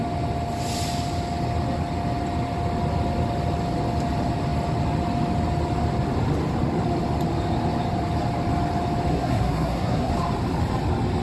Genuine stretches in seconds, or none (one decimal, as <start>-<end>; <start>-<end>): 0.0-9.1; 10.1-11.2